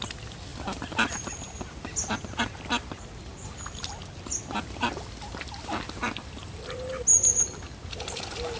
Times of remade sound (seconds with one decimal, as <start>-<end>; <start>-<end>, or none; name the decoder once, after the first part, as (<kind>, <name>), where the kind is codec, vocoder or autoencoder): none